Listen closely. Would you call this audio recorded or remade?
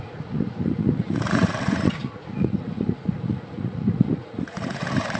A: remade